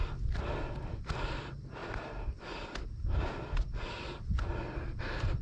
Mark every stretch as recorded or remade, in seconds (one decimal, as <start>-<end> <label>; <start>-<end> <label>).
0.0-5.4 recorded